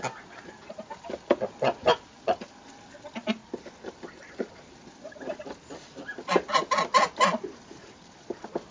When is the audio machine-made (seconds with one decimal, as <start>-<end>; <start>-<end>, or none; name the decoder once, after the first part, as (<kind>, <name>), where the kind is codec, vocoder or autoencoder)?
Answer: none